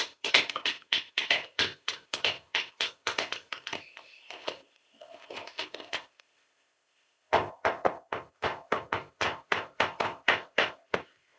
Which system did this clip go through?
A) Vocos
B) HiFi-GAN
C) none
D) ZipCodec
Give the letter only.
D